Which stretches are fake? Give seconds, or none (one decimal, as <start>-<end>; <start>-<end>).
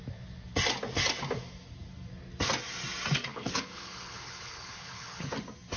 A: 3.3-5.3